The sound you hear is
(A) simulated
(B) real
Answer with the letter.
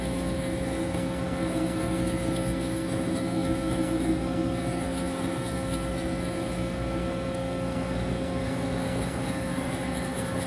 A